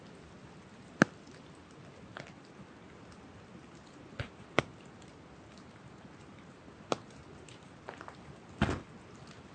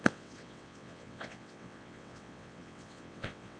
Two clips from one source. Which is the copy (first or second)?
second